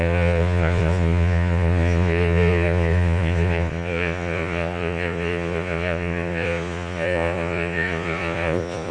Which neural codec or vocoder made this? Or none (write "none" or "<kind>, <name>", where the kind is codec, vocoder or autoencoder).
vocoder, Vocos